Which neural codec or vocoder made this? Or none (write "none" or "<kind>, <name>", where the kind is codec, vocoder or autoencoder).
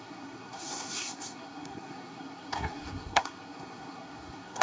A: codec, SNAC